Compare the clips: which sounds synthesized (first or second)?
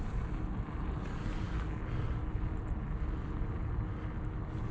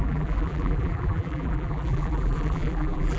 second